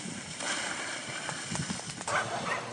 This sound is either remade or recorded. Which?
recorded